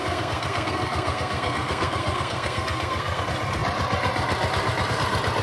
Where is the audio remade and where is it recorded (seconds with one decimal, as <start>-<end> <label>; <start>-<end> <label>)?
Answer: 0.0-3.2 remade; 3.2-5.4 recorded